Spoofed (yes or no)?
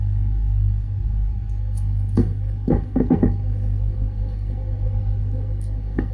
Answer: yes